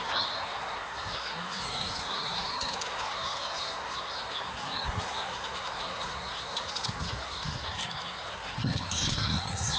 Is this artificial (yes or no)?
yes